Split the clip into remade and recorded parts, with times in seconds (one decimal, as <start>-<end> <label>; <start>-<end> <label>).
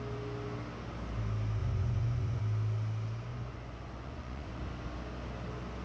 0.0-1.6 recorded; 1.6-2.4 remade; 2.4-3.3 recorded; 3.3-4.6 remade; 4.6-5.8 recorded